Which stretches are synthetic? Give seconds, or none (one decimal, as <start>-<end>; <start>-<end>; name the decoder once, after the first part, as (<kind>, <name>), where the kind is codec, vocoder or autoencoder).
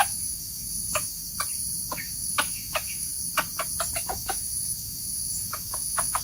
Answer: 0.0-1.2 (autoencoder, DAC-VAE); 1.9-3.1; 4.0-6.2